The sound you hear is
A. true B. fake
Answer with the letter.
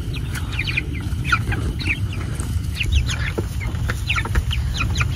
A